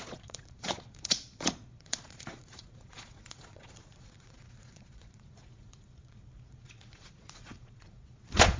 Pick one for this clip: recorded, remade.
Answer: remade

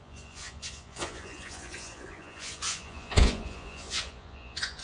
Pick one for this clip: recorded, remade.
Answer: remade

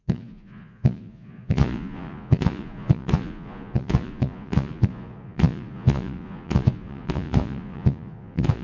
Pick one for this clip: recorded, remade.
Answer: remade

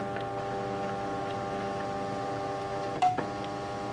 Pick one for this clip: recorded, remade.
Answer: recorded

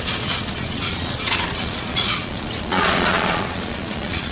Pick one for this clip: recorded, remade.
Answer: remade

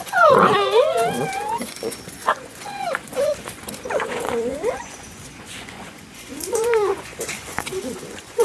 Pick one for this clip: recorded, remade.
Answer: remade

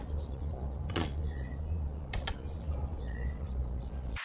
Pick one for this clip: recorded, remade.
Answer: remade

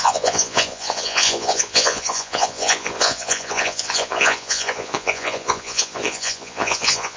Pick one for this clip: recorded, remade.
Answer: remade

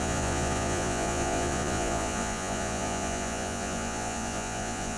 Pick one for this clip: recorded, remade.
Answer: remade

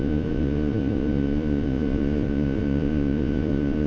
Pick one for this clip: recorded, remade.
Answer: remade